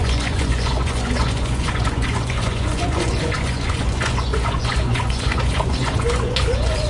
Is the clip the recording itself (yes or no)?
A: no